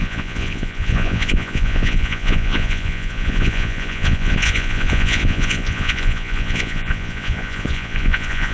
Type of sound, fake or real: fake